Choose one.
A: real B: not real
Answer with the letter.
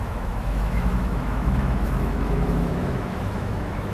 B